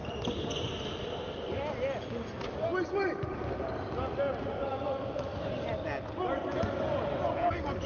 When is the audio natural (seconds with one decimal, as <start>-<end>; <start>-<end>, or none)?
0.0-4.7; 5.5-7.9